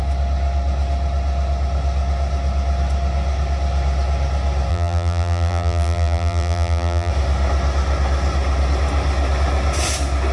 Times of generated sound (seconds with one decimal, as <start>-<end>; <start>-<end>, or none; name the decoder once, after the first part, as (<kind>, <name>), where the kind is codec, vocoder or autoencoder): 4.7-7.1 (vocoder, BigVGAN v2)